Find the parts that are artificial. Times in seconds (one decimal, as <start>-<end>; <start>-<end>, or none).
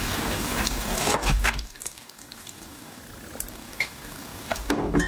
0.0-3.0; 3.5-5.1